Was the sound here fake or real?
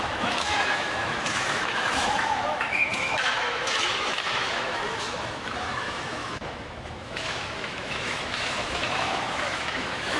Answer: fake